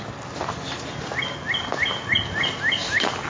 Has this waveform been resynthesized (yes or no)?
no